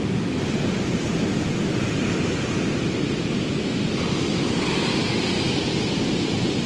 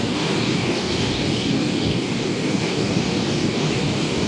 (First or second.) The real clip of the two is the first